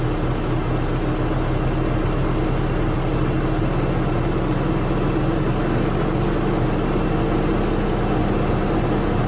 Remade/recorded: recorded